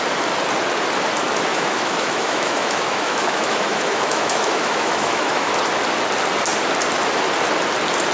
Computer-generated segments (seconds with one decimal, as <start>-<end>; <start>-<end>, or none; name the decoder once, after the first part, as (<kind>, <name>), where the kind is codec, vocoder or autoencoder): 1.5-5.6 (autoencoder, DAC-VAE)